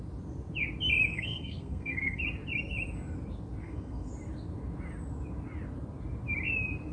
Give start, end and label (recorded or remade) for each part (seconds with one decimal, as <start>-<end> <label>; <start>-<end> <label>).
0.0-1.1 recorded; 1.1-2.2 remade; 2.2-3.6 recorded; 3.6-4.1 remade; 4.1-6.9 recorded